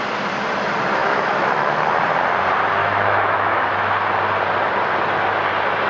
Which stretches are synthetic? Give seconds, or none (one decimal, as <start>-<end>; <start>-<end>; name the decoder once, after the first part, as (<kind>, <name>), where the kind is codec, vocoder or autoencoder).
1.0-1.8 (autoencoder, DAC-VAE); 2.8-3.9